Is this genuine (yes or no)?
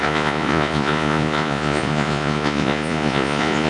no